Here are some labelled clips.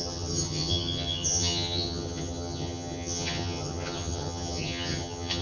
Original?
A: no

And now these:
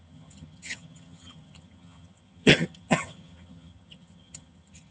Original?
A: no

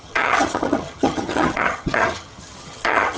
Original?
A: no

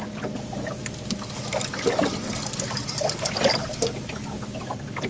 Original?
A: yes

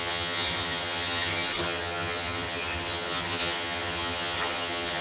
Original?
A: no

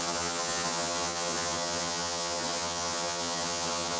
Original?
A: no